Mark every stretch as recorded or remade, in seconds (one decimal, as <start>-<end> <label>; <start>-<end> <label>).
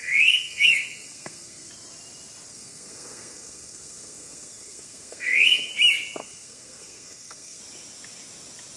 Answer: 0.0-1.7 remade; 1.7-2.5 recorded; 2.5-5.7 remade; 5.7-6.2 recorded; 6.2-7.6 remade; 7.6-8.8 recorded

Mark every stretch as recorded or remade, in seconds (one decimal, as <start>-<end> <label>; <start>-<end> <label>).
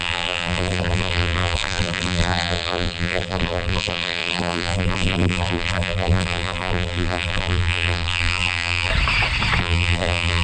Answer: 0.0-8.9 remade; 8.9-9.6 recorded; 9.6-10.4 remade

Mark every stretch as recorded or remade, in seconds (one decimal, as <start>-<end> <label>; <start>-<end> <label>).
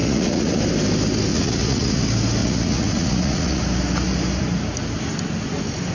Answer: 0.0-0.6 remade; 0.6-1.3 recorded; 1.3-2.0 remade; 2.0-2.4 recorded; 2.4-3.6 remade; 3.6-5.9 recorded